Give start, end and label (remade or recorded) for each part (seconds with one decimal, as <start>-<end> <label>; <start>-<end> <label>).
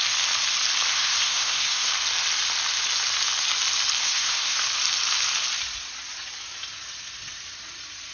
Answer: 0.0-0.9 recorded; 0.9-1.9 remade; 1.9-4.0 recorded; 4.0-4.6 remade; 4.6-8.1 recorded